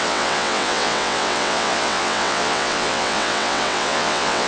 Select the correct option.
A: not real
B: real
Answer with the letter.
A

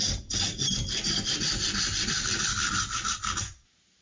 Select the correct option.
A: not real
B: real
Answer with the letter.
B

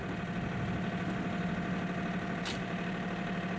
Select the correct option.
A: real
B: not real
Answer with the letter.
A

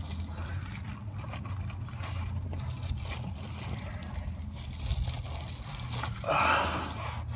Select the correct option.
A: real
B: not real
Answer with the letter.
A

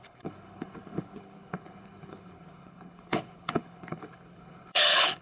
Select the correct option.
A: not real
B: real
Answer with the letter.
A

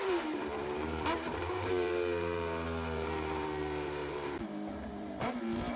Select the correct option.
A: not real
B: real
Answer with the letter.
A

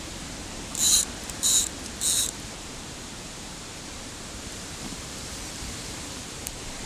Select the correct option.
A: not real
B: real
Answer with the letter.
A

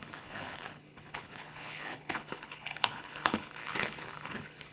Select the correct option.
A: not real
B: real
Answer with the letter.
A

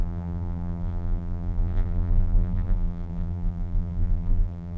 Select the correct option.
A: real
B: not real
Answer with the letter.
B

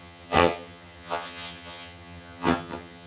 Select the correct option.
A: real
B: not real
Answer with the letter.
B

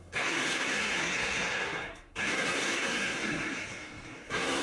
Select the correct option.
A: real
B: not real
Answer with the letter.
B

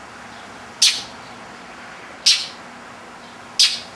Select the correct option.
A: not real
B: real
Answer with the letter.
B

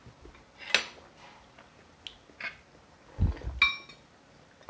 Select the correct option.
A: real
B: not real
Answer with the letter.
A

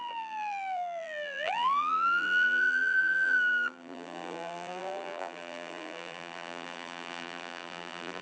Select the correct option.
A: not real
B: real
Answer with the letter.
A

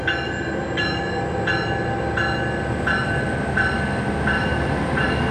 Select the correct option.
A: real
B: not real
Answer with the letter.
A